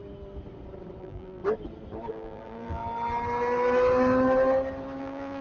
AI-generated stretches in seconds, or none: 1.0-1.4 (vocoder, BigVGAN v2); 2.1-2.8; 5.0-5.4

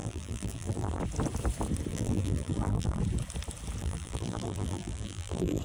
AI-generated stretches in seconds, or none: 0.0-1.0 (vocoder, BigVGAN v2); 1.9-3.0; 3.8-5.6

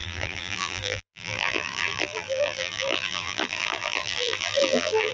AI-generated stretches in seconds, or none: 0.0-5.1 (vocoder, BigVGAN v2)

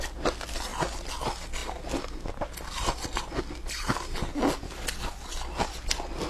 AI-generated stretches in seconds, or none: 0.7-1.2 (vocoder, BigVGAN v2)

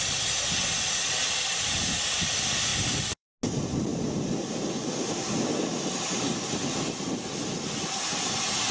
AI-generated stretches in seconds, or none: 2.7-3.3 (vocoder, BigVGAN v2)

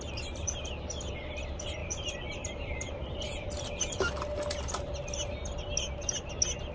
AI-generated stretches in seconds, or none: 1.8-4.0 (vocoder, BigVGAN v2)